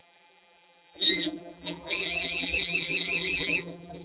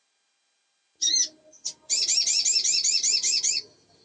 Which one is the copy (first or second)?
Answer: first